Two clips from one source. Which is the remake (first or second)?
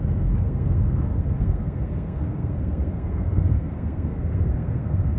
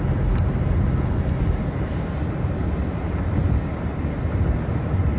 first